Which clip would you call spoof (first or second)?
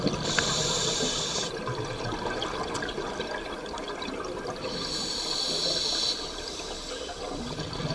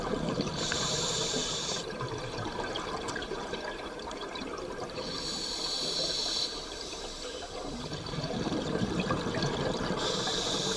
second